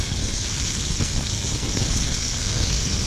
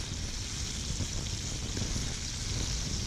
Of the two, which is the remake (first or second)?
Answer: first